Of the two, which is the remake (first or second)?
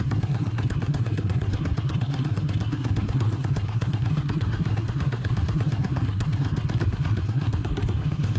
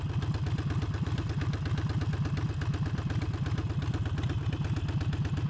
first